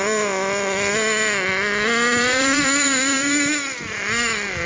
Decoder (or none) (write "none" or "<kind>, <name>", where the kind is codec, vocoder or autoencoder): vocoder, BigVGAN v2